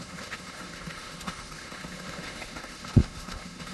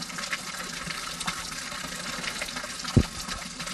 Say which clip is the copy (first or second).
first